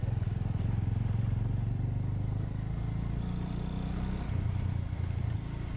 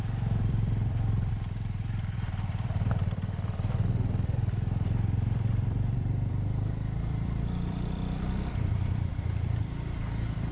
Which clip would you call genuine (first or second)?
first